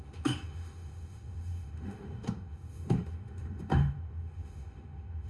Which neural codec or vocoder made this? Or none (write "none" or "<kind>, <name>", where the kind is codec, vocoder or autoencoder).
autoencoder, DAC-VAE